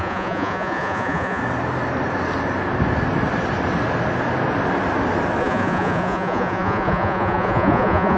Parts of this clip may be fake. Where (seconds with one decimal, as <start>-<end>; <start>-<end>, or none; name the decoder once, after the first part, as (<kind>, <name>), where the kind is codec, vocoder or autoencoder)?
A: 0.0-1.4 (vocoder, Vocos); 5.4-8.2